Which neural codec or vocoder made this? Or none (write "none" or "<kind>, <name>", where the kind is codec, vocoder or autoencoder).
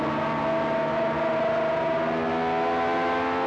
none